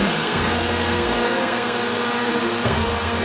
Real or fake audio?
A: fake